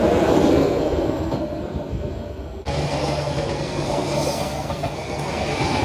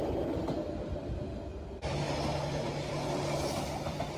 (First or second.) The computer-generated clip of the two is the first